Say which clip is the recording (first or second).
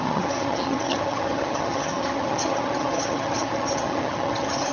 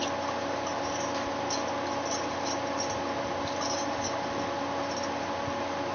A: second